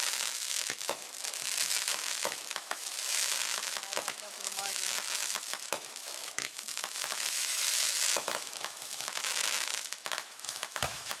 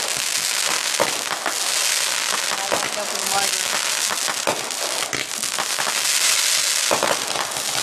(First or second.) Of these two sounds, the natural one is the second